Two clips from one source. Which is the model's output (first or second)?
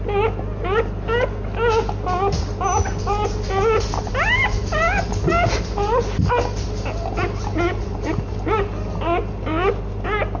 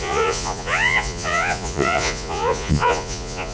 second